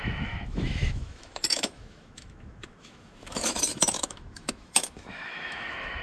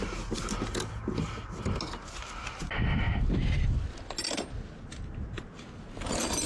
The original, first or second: second